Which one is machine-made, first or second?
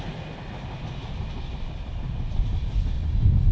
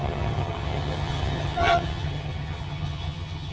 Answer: second